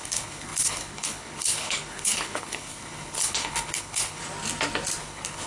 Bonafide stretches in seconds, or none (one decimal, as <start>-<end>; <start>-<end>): 4.2-5.0